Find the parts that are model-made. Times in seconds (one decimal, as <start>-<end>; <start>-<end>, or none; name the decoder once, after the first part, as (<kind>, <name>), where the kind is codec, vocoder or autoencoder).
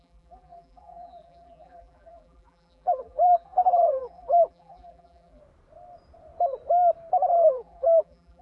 0.0-5.4 (vocoder, BigVGAN v2); 7.3-8.4